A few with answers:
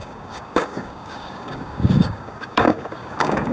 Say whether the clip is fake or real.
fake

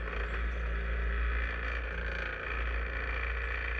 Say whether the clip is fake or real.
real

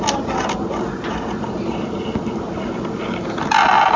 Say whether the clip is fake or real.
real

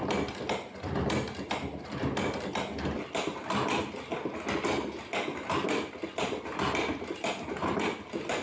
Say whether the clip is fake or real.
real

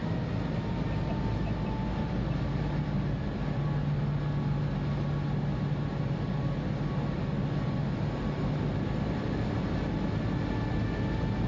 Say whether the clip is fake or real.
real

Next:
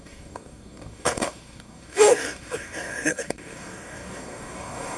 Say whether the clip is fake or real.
fake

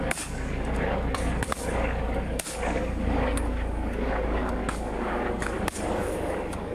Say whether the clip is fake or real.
fake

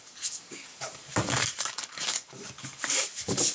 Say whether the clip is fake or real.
fake